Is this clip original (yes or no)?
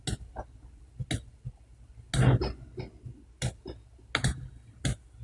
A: yes